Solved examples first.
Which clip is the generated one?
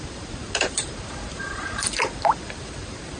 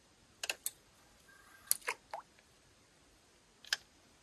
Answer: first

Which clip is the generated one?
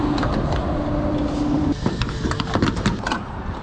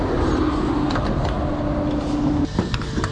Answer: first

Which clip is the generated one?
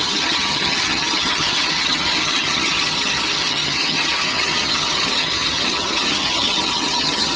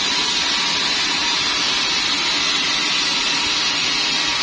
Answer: first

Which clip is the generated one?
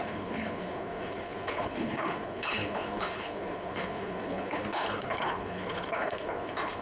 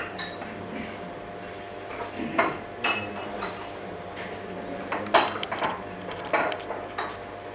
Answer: first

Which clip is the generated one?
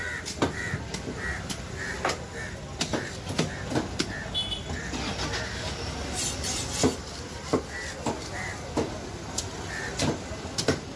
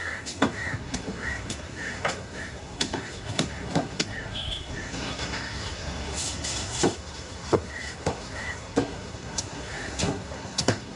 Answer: second